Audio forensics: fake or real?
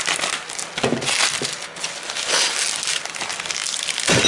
real